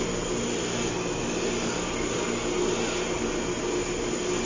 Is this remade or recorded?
recorded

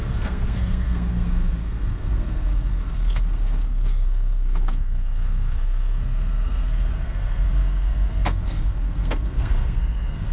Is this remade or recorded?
remade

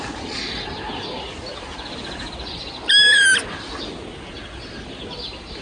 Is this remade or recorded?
recorded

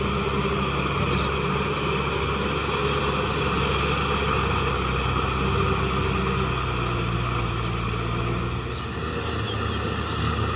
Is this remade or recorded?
recorded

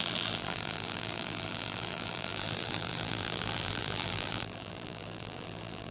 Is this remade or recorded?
remade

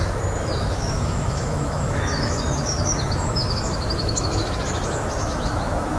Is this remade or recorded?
remade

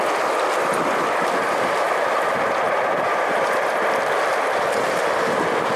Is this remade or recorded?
remade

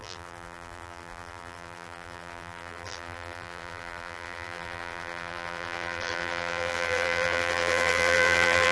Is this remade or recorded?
remade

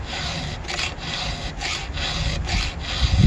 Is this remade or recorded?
recorded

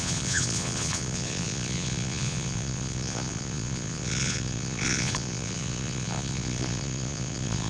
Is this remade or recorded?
remade